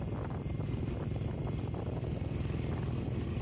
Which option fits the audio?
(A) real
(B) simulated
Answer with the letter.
A